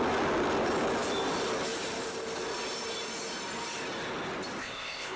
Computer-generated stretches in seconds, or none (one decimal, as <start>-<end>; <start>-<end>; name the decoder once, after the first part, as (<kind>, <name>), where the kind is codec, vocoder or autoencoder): 4.6-5.2 (codec, ZipCodec)

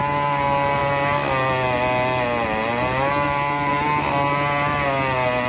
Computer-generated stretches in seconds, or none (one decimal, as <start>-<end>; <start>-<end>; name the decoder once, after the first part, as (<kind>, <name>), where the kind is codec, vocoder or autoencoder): none

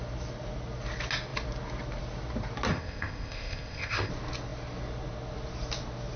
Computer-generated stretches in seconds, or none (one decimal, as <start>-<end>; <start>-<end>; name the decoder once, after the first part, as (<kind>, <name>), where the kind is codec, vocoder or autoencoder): 2.7-4.1 (codec, ZipCodec)

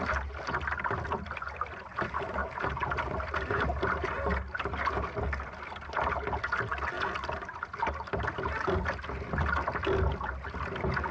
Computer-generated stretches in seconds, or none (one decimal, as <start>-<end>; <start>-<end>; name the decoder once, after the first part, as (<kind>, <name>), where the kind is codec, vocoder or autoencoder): none

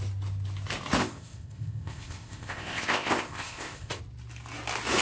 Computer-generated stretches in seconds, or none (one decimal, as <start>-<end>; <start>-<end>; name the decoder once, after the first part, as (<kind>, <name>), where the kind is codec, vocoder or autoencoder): 1.0-4.0 (codec, ZipCodec)

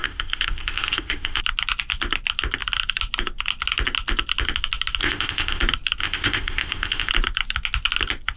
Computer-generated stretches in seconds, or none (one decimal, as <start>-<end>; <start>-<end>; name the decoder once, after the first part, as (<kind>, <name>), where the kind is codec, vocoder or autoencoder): 0.0-1.4 (codec, ZipCodec); 5.0-5.6; 6.0-7.1